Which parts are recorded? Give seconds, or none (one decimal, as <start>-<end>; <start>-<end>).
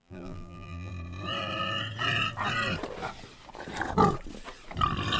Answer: 0.9-5.2